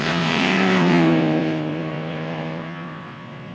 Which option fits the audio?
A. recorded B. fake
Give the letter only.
B